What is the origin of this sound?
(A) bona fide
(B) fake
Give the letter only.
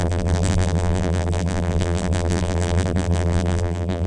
B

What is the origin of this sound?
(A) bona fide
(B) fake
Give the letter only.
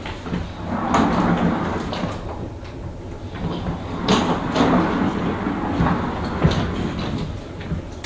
A